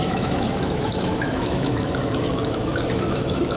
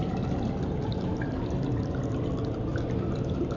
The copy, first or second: first